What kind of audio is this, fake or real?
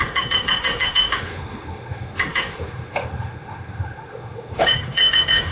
fake